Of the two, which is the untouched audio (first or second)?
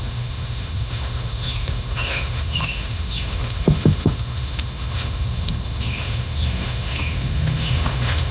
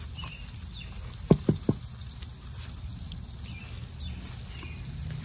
second